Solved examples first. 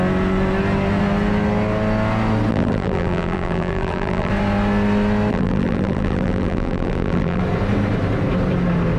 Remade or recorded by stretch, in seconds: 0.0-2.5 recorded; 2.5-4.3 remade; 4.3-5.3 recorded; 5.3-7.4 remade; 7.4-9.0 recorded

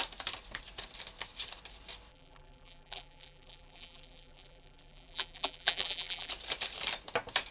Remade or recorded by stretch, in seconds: 0.0-2.1 recorded; 2.1-6.3 remade; 6.3-7.5 recorded

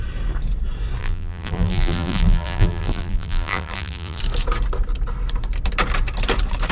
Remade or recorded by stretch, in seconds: 0.0-1.0 recorded; 1.0-4.2 remade; 4.2-6.7 recorded